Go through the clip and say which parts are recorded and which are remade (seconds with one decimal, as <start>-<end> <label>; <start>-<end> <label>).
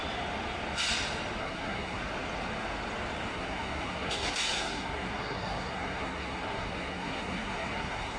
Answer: 0.0-1.4 recorded; 1.4-2.0 remade; 2.0-3.3 recorded; 3.3-8.2 remade